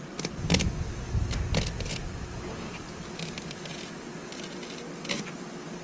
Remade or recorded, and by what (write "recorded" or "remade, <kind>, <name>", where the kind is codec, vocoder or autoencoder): recorded